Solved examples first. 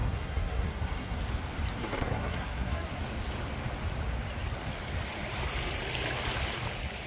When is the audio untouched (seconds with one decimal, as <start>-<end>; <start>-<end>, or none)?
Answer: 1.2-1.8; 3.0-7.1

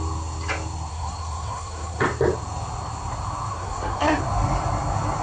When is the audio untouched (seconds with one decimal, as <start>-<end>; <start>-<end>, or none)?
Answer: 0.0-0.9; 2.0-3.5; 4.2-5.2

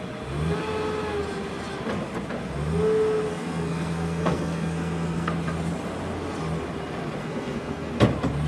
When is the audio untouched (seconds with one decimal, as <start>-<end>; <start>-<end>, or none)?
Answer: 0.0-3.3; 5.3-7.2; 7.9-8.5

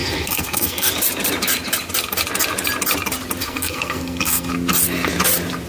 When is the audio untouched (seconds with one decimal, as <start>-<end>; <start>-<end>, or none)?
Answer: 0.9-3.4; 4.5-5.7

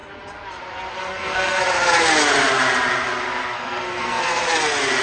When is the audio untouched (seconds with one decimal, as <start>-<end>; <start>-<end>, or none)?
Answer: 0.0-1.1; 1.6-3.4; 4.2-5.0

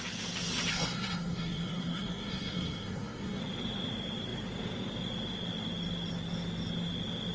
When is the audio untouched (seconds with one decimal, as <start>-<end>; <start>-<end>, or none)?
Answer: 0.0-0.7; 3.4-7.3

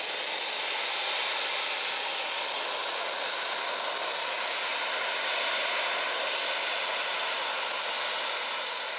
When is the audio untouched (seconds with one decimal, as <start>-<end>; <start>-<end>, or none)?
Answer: 0.0-9.0

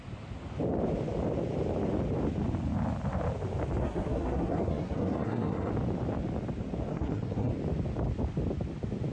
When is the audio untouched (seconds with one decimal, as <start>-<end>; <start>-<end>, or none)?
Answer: 0.0-3.8; 5.7-6.9; 7.5-9.1